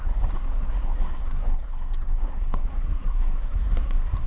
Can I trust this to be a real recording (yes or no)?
no